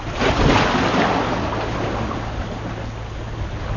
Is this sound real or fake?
real